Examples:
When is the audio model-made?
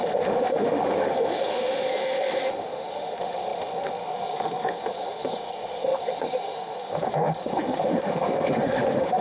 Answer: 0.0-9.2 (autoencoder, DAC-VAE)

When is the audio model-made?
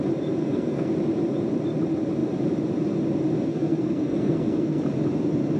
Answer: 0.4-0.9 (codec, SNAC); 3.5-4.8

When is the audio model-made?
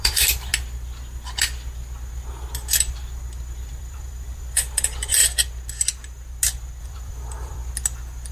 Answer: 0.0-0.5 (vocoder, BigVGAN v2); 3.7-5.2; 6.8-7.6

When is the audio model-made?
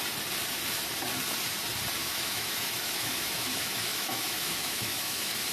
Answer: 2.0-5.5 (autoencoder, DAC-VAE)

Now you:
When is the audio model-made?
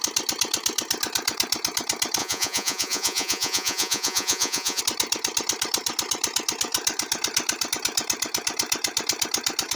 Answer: 2.2-4.8 (vocoder, Vocos)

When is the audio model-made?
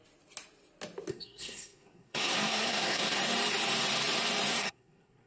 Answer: 1.1-3.2 (codec, SNAC); 4.5-5.3